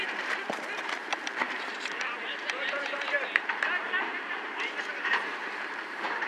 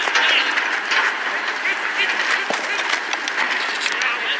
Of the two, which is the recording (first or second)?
second